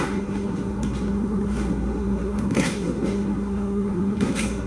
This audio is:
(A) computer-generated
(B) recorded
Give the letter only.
A